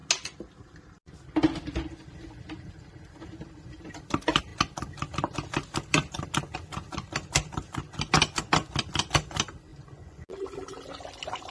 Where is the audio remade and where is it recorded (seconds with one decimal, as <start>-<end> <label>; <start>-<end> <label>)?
0.0-9.7 recorded; 9.7-10.3 remade; 10.3-11.5 recorded

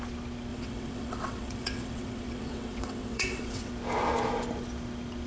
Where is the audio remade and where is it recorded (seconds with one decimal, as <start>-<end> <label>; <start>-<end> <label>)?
0.0-0.5 recorded; 0.5-3.7 remade; 3.7-5.3 recorded

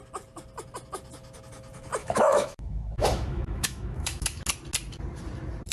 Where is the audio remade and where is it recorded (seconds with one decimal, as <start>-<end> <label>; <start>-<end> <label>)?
0.0-2.0 recorded; 2.0-4.4 remade; 4.4-5.7 recorded

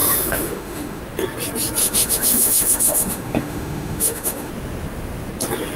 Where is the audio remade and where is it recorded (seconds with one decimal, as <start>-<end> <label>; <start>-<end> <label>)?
0.0-1.0 remade; 1.0-1.8 recorded; 1.8-4.5 remade; 4.5-5.8 recorded

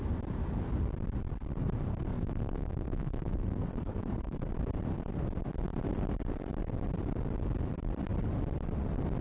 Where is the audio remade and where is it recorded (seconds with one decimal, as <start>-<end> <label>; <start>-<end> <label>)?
0.0-1.9 recorded; 1.9-4.5 remade; 4.5-9.2 recorded

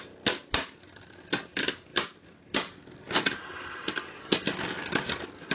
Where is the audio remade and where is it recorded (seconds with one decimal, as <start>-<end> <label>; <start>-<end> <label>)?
0.0-5.5 recorded

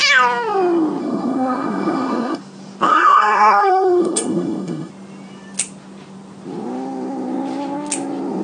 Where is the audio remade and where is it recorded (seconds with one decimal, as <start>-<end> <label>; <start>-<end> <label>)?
0.0-1.0 recorded; 1.0-2.4 remade; 2.4-2.9 recorded; 2.9-4.9 remade; 4.9-8.4 recorded